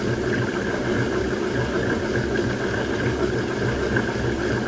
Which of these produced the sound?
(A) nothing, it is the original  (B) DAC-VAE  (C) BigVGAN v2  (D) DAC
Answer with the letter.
A